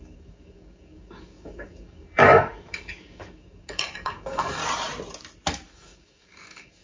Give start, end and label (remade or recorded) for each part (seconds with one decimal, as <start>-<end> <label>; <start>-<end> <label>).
0.0-4.6 remade; 4.6-5.7 recorded; 5.7-6.8 remade